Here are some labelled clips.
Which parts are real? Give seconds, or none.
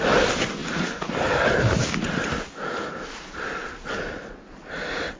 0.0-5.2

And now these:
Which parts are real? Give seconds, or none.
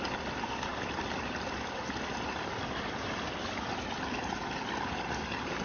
0.0-5.6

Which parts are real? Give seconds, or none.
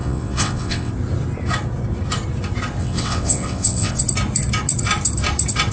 0.9-2.8; 4.0-5.7